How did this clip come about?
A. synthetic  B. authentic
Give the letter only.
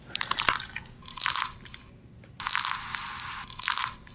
B